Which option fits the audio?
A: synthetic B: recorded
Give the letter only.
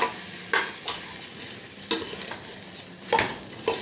B